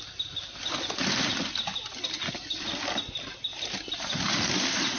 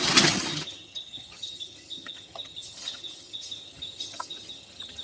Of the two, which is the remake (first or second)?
second